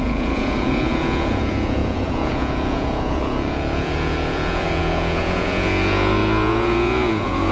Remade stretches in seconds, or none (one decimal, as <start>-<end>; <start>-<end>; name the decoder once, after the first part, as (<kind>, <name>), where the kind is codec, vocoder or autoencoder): 0.0-7.5 (vocoder, Vocos)